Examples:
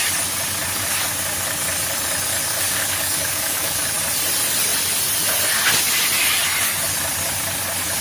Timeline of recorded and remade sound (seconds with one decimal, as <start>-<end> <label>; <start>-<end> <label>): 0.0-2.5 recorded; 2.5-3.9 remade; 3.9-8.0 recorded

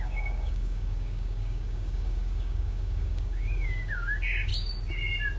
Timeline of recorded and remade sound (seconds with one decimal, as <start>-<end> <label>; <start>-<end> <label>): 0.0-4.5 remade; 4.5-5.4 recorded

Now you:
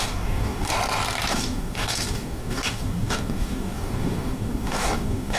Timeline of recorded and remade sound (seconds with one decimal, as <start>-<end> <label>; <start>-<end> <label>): 0.0-0.7 remade; 0.7-1.3 recorded; 1.3-5.4 remade

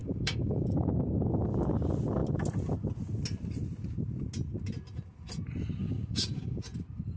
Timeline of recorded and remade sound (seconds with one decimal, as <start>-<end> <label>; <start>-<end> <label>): 0.0-0.5 remade; 0.5-5.8 recorded; 5.8-6.6 remade; 6.6-7.2 recorded

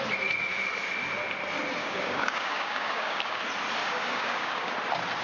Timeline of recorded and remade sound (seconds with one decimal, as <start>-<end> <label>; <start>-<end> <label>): 0.0-1.8 recorded; 1.8-3.4 remade; 3.4-3.8 recorded; 3.8-4.7 remade; 4.7-5.2 recorded

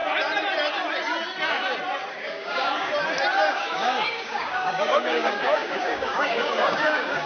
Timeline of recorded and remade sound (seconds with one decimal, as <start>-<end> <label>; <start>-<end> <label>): 0.0-2.1 recorded; 2.1-2.9 remade; 2.9-3.5 recorded; 3.5-7.3 remade